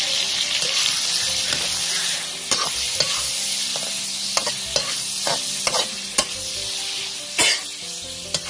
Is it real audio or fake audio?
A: real